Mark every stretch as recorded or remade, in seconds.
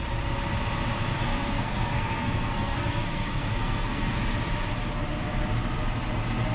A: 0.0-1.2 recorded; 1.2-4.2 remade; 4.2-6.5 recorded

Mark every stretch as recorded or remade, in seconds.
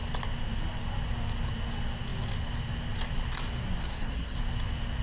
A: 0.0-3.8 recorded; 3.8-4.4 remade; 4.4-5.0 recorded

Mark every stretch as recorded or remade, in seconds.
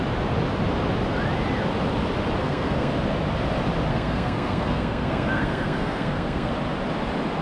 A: 0.0-2.4 recorded; 2.4-2.9 remade; 2.9-3.9 recorded; 3.9-6.5 remade; 6.5-7.4 recorded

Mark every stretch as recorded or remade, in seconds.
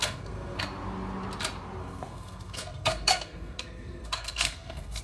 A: 0.0-0.6 remade; 0.6-1.8 recorded; 1.8-5.0 remade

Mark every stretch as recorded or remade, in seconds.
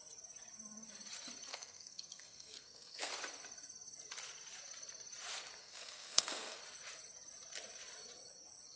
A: 0.0-1.5 recorded; 1.5-3.1 remade; 3.1-5.6 recorded; 5.6-6.6 remade; 6.6-8.8 recorded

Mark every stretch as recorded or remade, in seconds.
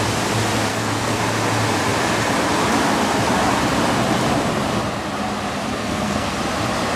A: 0.0-0.7 recorded; 0.7-1.2 remade; 1.2-5.7 recorded; 5.7-6.3 remade; 6.3-7.0 recorded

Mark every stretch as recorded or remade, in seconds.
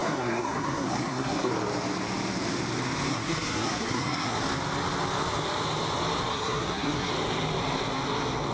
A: 0.0-1.5 remade; 1.5-3.1 recorded; 3.1-4.4 remade; 4.4-6.3 recorded; 6.3-7.1 remade; 7.1-8.5 recorded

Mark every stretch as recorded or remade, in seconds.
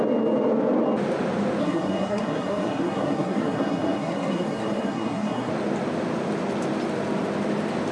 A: 0.0-1.6 recorded; 1.6-5.5 remade; 5.5-7.9 recorded